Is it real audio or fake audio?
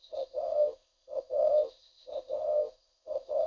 fake